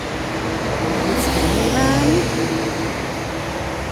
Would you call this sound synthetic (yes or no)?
no